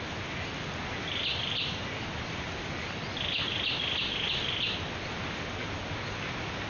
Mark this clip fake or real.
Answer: real